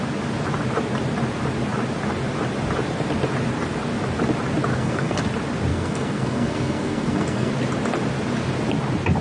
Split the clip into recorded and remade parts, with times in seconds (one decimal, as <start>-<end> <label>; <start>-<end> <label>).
0.0-4.7 recorded; 4.7-5.2 remade; 5.2-5.7 recorded; 5.7-7.5 remade; 7.5-9.2 recorded